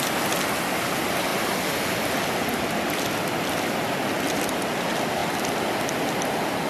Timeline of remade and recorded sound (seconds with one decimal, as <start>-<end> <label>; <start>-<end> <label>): 0.0-6.7 recorded